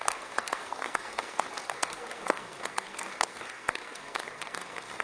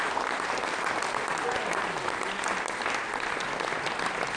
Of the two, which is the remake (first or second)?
first